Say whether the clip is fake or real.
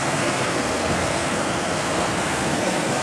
fake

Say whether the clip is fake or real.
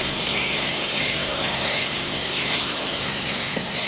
fake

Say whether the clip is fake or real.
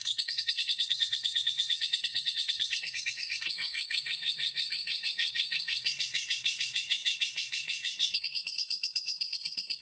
fake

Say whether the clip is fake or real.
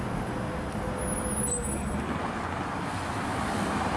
real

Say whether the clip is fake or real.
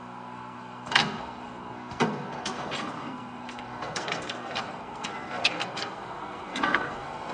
fake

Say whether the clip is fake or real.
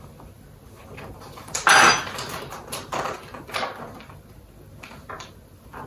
real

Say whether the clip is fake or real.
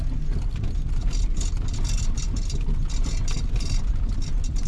real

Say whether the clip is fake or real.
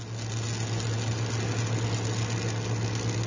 real